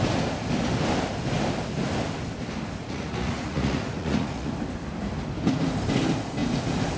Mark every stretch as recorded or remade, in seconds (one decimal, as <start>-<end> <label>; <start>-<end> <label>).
0.0-2.8 recorded; 2.8-4.5 remade; 4.5-7.0 recorded